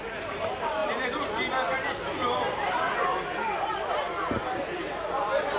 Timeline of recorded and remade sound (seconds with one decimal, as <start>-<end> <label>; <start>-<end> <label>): 0.0-0.8 recorded; 0.8-2.9 remade; 2.9-4.4 recorded; 4.4-5.6 remade